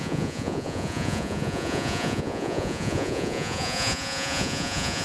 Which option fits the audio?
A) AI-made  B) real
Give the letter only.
A